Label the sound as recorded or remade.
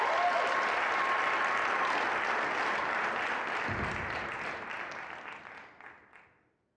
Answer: recorded